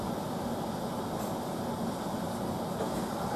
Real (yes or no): yes